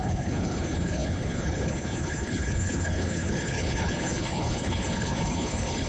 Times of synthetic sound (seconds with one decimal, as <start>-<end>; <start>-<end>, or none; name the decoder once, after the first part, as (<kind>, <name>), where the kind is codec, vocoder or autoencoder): 0.0-5.9 (codec, HILCodec)